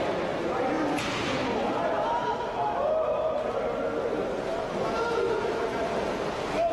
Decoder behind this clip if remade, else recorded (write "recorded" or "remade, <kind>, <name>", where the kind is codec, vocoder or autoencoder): recorded